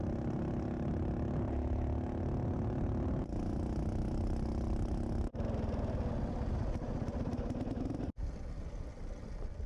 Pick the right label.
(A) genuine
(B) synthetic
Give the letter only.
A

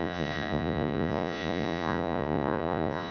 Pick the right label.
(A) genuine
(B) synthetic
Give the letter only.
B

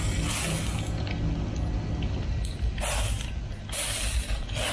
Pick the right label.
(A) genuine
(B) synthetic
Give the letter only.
A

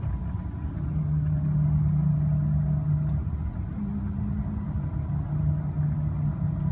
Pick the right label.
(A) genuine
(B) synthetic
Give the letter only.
A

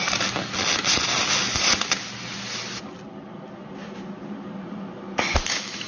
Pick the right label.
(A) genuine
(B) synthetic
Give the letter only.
A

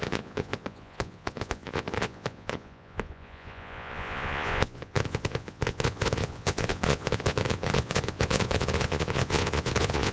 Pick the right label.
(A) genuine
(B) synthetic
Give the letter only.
B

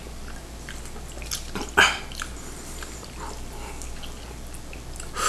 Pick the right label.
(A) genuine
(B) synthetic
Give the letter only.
A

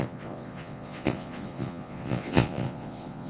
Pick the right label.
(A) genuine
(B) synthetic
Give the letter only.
B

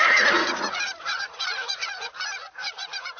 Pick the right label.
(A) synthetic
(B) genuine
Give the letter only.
A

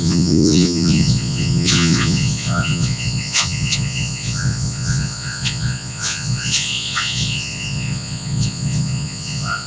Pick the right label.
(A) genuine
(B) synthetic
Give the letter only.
B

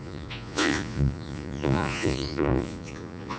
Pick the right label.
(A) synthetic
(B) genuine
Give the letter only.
A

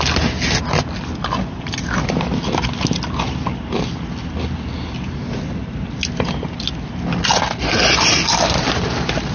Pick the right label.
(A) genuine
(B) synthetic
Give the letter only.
A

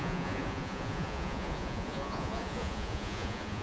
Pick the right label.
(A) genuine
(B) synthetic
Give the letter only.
B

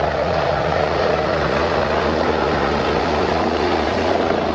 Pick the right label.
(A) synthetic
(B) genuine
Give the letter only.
A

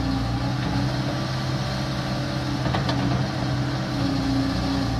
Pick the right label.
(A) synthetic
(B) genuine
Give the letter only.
B